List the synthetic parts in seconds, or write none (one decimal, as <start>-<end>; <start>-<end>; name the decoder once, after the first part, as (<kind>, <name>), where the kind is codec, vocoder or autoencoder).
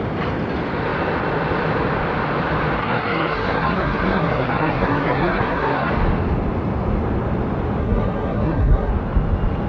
2.8-5.9 (codec, SNAC); 7.8-8.9